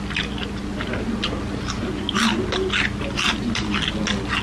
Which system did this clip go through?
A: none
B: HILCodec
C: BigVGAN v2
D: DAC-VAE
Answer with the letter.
A